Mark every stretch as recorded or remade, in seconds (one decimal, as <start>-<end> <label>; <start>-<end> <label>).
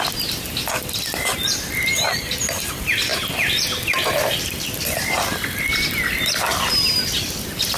0.0-7.8 recorded